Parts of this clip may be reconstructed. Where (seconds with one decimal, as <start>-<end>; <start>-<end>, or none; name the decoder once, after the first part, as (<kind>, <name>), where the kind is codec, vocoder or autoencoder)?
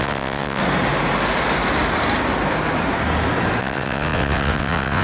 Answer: 0.0-0.6 (vocoder, WaveNeXt); 3.6-5.0